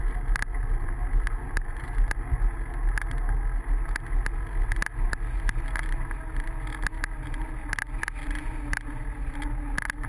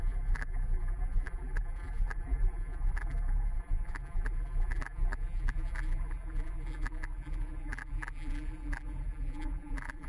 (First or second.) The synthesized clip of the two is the second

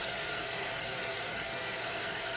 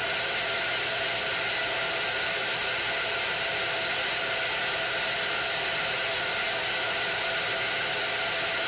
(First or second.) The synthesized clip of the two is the first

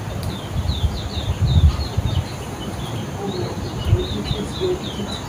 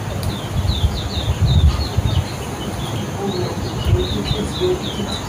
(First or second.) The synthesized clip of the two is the first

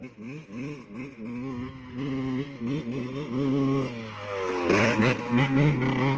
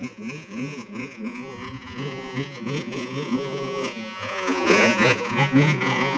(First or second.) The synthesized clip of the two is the second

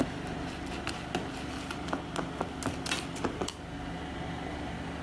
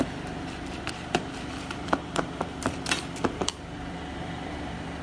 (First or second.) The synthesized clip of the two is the second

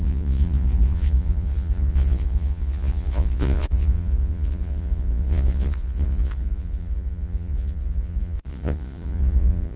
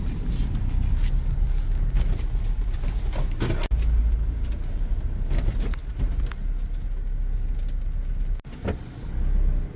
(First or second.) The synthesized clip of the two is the first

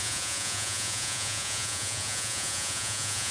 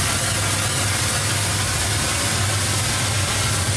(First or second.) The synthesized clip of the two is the first